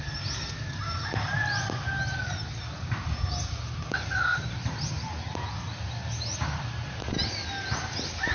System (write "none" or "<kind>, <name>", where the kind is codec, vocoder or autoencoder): none